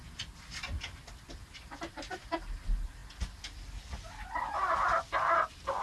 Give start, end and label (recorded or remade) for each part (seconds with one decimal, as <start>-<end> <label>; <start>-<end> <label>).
0.0-5.8 recorded

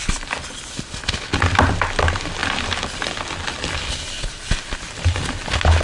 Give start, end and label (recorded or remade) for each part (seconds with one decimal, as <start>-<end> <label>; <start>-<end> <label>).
0.0-5.8 recorded

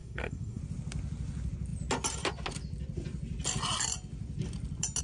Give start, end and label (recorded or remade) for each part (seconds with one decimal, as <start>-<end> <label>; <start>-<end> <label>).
0.0-0.6 remade; 0.6-5.0 recorded